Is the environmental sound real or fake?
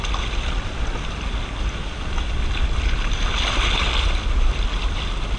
real